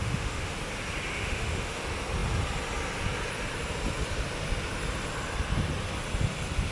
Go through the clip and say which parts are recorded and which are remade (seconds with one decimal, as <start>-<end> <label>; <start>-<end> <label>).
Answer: 0.0-0.5 remade; 0.5-1.1 recorded; 1.1-1.8 remade; 1.8-6.7 recorded